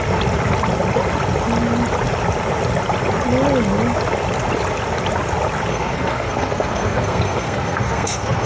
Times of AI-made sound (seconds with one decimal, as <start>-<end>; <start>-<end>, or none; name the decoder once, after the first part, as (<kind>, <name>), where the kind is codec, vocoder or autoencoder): 5.7-8.5 (codec, SNAC)